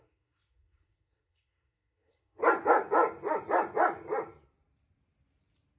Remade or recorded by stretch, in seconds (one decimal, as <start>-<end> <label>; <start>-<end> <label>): 0.0-2.4 remade; 2.4-5.8 recorded